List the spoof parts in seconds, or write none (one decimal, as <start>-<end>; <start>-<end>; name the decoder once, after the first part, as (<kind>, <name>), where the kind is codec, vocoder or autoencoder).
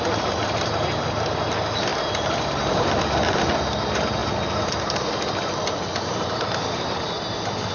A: 1.9-3.5 (vocoder, BigVGAN v2)